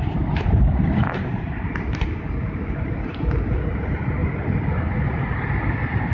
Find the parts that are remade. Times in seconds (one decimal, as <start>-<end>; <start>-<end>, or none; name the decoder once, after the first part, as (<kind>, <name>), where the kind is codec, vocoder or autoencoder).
0.0-4.2 (vocoder, BigVGAN v2)

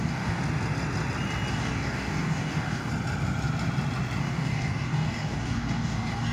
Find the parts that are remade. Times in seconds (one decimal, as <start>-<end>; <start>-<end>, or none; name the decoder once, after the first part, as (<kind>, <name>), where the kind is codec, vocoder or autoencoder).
0.0-0.4 (codec, DAC); 1.5-2.9; 4.2-6.3

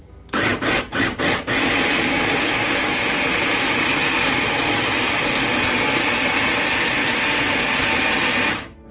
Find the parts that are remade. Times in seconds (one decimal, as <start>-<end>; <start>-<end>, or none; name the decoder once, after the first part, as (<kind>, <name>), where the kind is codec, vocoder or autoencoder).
none